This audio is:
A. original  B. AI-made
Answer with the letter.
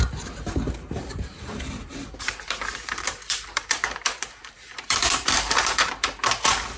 B